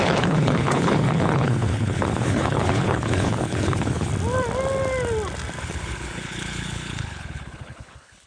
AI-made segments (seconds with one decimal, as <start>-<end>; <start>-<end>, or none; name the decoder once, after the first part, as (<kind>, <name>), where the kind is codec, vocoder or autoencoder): 0.0-4.1 (codec, HILCodec); 5.6-8.3